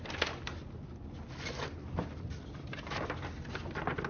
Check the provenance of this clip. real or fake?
real